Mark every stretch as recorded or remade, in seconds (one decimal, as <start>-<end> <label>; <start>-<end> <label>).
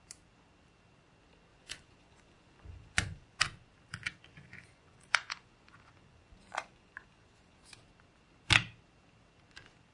0.0-1.5 recorded; 1.5-3.4 remade; 3.4-4.3 recorded; 4.3-7.7 remade; 7.7-9.9 recorded